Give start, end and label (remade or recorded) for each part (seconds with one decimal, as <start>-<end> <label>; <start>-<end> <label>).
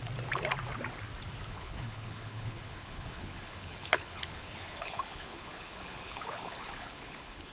0.0-1.5 recorded; 1.5-7.5 remade